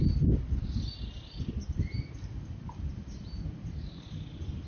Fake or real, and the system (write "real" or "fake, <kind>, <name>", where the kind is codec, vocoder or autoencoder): real